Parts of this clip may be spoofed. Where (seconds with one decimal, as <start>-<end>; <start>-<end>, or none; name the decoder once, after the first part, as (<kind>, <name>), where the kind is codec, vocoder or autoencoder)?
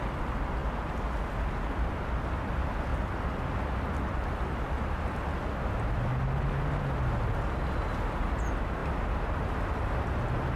none